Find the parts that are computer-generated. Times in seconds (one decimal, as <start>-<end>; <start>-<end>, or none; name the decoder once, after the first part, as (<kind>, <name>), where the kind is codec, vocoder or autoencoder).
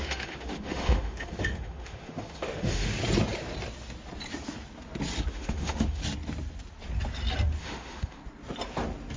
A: 0.0-2.9 (autoencoder, DAC-VAE); 5.3-6.0; 7.6-8.2